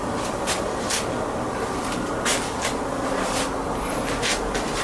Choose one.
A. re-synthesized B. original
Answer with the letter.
B